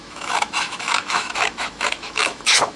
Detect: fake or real fake